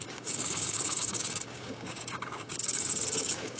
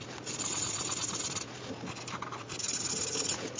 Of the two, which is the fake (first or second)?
first